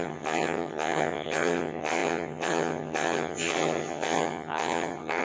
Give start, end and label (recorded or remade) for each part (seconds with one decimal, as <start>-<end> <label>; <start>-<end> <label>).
0.0-5.2 remade